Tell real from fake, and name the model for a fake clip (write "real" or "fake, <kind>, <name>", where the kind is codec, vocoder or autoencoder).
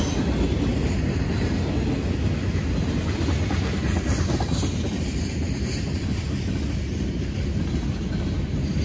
real